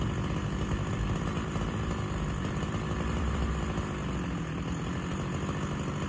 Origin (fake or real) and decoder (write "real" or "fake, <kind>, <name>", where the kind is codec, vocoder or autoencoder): fake, vocoder, BigVGAN v2